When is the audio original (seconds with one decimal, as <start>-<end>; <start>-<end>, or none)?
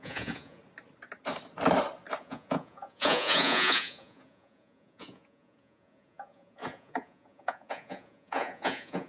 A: 0.6-2.2